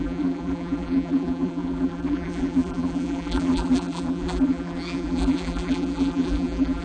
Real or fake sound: fake